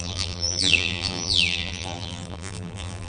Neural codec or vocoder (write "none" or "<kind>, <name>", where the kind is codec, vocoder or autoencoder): vocoder, BigVGAN v2